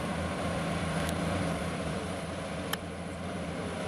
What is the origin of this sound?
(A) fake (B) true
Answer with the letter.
A